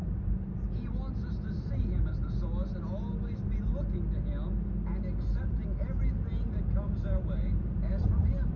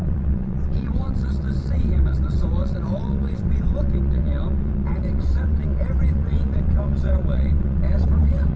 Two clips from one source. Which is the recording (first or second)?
first